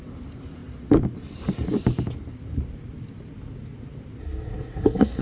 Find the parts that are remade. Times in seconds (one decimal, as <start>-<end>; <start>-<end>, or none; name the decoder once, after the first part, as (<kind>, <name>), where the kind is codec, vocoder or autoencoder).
4.2-5.2 (codec, SNAC)